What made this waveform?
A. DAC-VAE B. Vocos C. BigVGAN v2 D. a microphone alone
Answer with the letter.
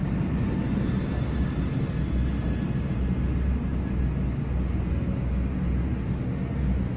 D